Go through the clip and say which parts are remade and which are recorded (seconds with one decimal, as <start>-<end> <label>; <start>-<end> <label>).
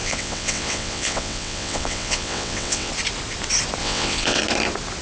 0.0-2.9 remade; 2.9-3.8 recorded; 3.8-4.4 remade; 4.4-5.0 recorded